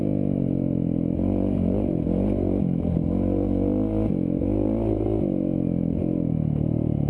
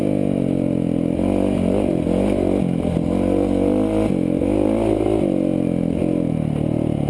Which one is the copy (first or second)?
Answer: first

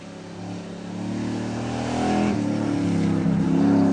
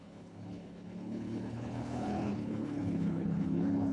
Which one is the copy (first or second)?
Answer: second